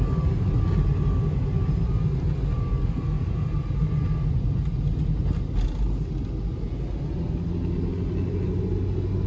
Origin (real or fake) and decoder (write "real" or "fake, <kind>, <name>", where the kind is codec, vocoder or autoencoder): real